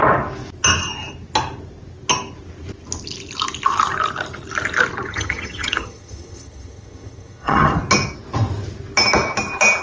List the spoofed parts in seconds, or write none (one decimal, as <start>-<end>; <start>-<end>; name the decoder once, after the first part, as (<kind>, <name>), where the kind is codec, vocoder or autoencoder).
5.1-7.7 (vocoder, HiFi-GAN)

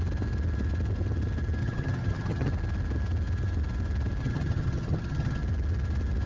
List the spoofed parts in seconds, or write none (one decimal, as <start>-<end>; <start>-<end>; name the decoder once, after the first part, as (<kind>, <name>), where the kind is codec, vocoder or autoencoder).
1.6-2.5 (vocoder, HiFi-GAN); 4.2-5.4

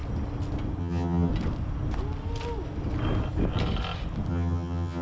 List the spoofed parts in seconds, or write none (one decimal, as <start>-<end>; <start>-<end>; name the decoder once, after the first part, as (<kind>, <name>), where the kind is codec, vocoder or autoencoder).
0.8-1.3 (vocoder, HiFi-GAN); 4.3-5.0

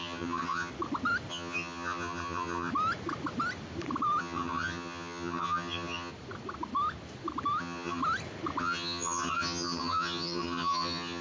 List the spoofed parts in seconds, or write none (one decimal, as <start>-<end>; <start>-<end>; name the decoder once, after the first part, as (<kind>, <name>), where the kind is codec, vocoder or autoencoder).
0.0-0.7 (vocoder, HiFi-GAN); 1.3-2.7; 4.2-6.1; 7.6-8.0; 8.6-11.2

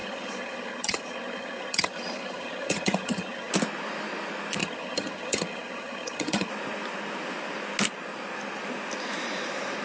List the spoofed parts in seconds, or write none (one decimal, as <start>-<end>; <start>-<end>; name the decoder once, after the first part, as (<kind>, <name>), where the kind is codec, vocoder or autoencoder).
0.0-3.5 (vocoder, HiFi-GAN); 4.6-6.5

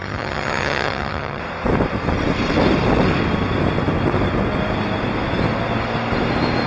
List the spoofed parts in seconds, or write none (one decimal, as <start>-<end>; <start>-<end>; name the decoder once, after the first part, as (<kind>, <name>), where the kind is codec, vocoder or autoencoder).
0.0-1.4 (vocoder, HiFi-GAN)

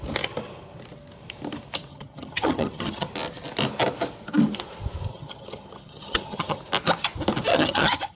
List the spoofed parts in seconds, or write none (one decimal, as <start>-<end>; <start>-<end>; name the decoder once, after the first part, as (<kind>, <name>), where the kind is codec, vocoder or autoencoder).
1.9-3.1 (vocoder, HiFi-GAN); 5.1-6.6; 7.5-8.2